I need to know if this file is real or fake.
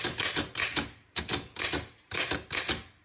real